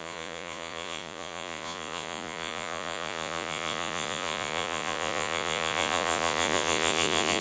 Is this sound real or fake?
fake